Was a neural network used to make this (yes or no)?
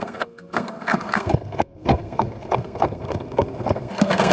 yes